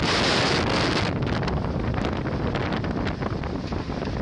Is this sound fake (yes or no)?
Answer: no